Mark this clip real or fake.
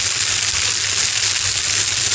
real